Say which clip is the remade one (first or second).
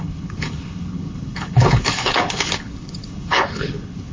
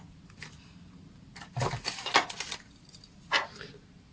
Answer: first